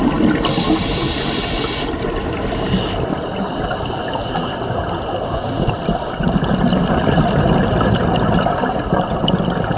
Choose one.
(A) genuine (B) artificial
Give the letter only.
A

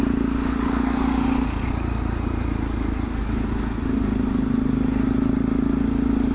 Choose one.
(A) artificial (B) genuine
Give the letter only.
B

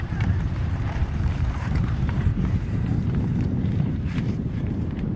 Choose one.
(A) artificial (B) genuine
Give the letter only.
A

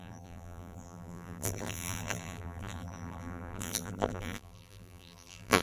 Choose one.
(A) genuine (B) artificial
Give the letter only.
B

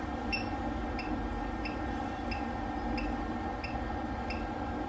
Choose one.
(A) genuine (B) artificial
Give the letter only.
A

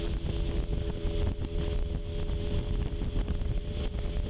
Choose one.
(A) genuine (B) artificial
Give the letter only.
A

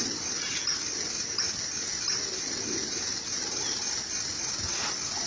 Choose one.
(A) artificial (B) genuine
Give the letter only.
B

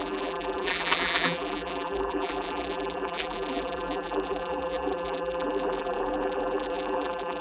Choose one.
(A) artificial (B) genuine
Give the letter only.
A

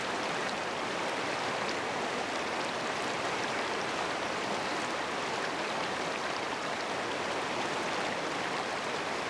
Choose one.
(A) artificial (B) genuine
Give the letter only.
A